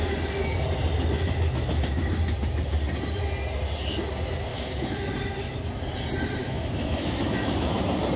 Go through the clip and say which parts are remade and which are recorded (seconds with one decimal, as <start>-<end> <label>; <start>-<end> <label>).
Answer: 0.0-4.5 recorded; 4.5-5.1 remade; 5.1-6.4 recorded; 6.4-7.7 remade; 7.7-8.2 recorded